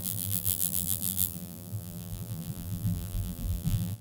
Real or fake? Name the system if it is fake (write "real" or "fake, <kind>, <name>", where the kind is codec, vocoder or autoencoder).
fake, vocoder, BigVGAN v2